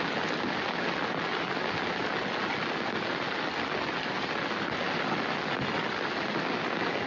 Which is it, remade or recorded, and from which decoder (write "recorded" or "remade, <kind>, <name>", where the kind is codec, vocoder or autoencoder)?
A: recorded